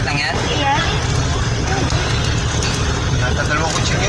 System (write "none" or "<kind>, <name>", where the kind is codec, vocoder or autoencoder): none